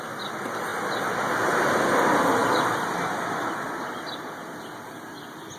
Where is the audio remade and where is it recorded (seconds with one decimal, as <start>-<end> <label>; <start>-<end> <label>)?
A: 0.0-5.6 recorded